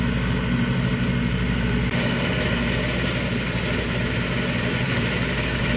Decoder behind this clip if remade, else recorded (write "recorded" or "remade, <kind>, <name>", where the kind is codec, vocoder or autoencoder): recorded